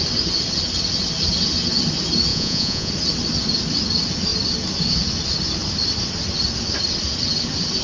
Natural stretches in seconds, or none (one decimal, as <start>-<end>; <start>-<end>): 0.0-2.3; 2.9-7.8